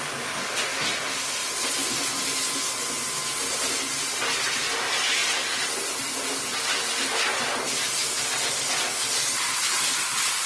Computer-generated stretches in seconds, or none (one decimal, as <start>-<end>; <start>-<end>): 1.4-2.4; 5.2-8.6